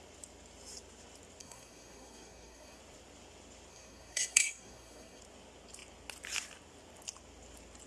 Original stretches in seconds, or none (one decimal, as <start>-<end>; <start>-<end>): 0.0-1.4; 2.8-3.7; 5.2-7.9